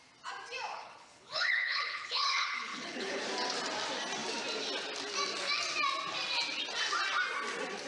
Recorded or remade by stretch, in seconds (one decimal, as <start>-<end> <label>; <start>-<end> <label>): 0.0-0.7 recorded; 0.7-3.2 remade; 3.2-7.9 recorded